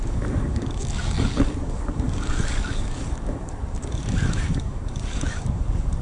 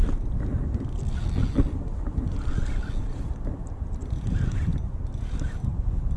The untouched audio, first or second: second